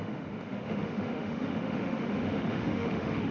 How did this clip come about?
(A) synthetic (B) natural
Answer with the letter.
A